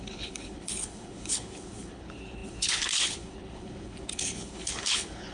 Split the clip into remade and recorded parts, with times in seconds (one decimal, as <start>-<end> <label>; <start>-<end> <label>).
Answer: 0.0-5.3 remade